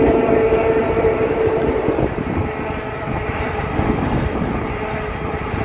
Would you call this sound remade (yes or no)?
no